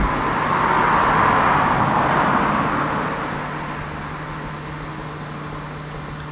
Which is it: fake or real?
real